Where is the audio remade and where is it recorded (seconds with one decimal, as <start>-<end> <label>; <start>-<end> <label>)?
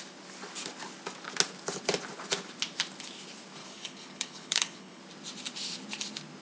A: 0.0-3.6 recorded; 3.6-5.0 remade; 5.0-6.4 recorded